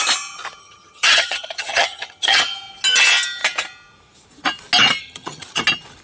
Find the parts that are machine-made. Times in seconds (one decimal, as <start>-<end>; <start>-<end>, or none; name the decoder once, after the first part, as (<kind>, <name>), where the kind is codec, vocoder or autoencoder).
0.6-2.4 (vocoder, HiFi-GAN); 5.0-5.6